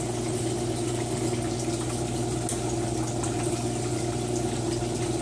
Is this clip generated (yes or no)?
no